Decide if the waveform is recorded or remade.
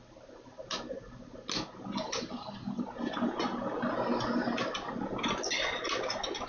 recorded